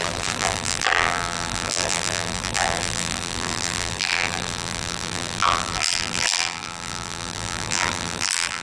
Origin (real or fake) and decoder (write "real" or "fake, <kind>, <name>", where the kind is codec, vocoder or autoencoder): fake, vocoder, BigVGAN v2